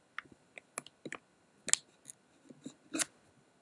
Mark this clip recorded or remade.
recorded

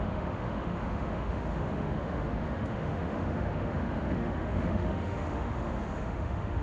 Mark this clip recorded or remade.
remade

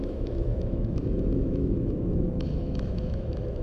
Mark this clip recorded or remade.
remade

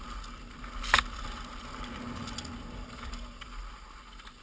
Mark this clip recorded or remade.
recorded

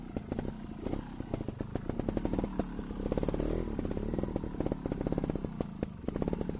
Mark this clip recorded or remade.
recorded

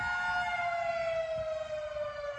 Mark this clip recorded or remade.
recorded